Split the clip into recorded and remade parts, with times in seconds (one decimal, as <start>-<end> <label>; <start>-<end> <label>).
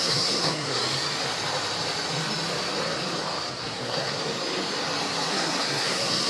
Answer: 0.0-0.8 remade; 0.8-3.6 recorded; 3.6-4.2 remade; 4.2-5.3 recorded; 5.3-6.3 remade